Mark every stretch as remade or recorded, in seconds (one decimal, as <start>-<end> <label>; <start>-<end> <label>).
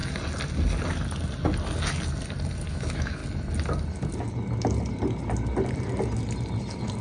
0.0-2.7 recorded; 2.7-3.2 remade; 3.2-7.0 recorded